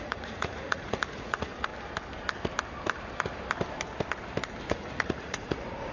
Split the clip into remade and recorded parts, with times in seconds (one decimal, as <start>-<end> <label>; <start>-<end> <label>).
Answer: 0.0-1.7 remade; 1.7-4.7 recorded; 4.7-5.9 remade